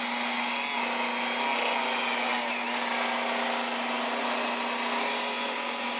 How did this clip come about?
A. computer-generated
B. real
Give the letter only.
B